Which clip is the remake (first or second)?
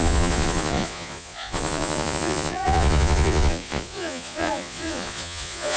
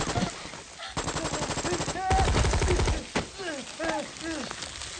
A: first